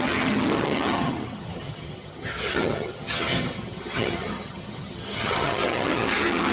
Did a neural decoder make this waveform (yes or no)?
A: yes